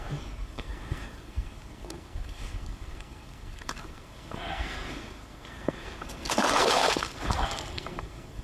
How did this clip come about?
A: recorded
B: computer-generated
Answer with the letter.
B